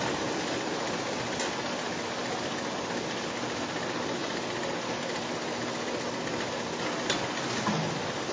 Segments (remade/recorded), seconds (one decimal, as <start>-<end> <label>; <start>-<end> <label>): 0.0-8.3 recorded